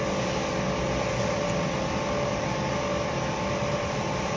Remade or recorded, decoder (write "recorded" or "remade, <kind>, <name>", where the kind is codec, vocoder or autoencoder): recorded